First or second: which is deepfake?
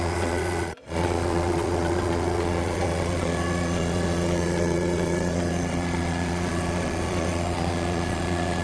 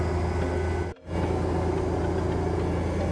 first